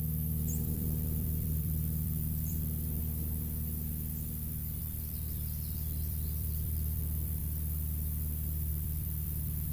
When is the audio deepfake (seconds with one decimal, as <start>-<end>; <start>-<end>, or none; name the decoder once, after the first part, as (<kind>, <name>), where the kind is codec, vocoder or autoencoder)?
0.0-3.0 (vocoder, BigVGAN v2); 4.8-7.4; 8.7-9.7